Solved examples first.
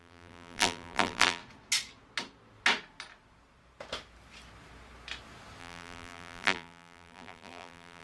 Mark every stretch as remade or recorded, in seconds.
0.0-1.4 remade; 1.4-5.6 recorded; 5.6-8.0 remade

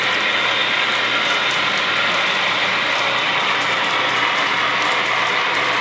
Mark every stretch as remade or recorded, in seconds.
0.0-0.6 recorded; 0.6-1.8 remade; 1.8-2.7 recorded; 2.7-5.8 remade

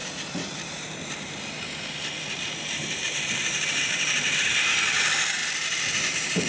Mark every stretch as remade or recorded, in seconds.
0.0-6.5 remade

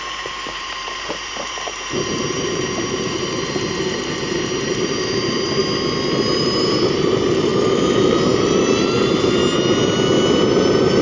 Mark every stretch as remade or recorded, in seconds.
0.0-5.6 remade; 5.6-6.4 recorded; 6.4-9.4 remade; 9.4-10.5 recorded; 10.5-11.0 remade

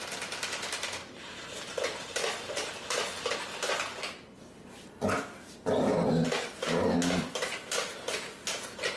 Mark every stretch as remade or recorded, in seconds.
0.0-9.0 recorded

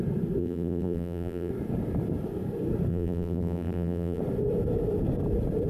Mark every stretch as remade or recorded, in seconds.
0.0-0.4 recorded; 0.4-1.5 remade; 1.5-2.9 recorded; 2.9-4.2 remade; 4.2-5.7 recorded

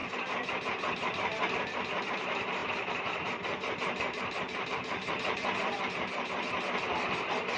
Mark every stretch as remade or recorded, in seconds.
0.0-2.6 recorded; 2.6-7.6 remade

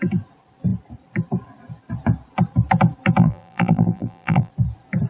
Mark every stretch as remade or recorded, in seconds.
0.0-3.2 recorded; 3.2-4.5 remade; 4.5-5.1 recorded